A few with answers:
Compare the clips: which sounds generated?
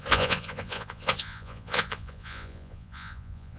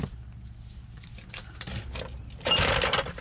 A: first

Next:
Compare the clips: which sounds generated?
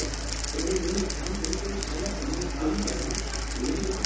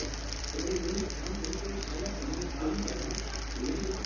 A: second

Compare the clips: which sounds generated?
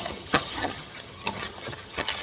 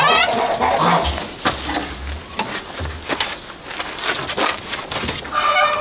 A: first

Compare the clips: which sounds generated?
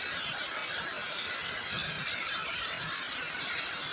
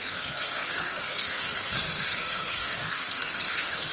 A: second